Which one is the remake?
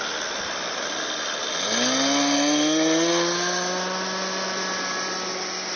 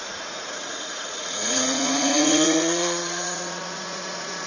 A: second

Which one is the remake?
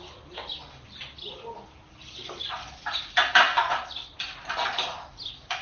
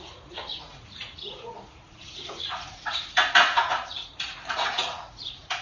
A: second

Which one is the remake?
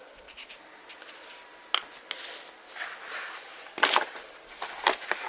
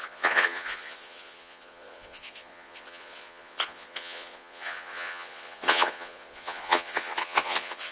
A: second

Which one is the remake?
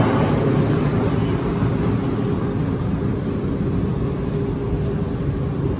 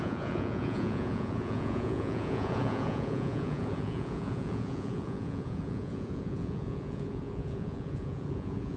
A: second